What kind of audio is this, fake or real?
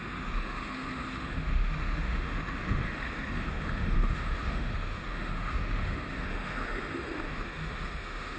fake